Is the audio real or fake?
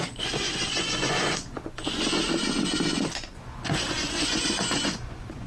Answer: fake